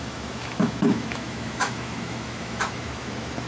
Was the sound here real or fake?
fake